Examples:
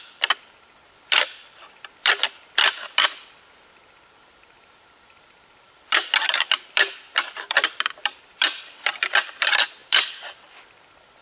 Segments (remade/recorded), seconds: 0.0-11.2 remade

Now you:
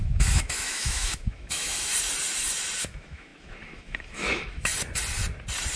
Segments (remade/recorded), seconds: 0.0-1.9 remade; 1.9-2.8 recorded; 2.8-4.7 remade; 4.7-5.8 recorded

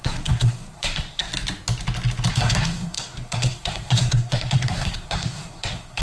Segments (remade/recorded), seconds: 0.0-1.3 remade; 1.3-2.3 recorded; 2.3-6.0 remade

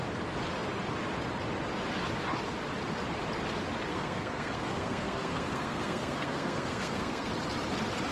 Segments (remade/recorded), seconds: 0.0-3.9 recorded; 3.9-7.3 remade; 7.3-8.1 recorded